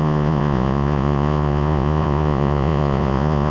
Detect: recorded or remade remade